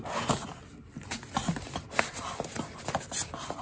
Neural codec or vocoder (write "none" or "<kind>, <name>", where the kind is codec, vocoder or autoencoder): none